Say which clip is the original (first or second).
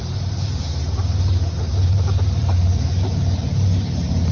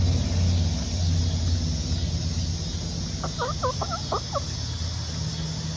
second